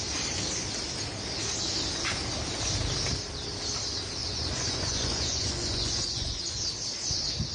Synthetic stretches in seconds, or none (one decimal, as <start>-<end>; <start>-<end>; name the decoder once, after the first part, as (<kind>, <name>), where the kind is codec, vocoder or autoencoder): 4.2-6.7 (vocoder, Vocos)